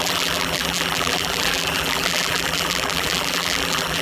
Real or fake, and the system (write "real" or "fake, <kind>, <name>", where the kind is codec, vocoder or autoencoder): fake, vocoder, BigVGAN v2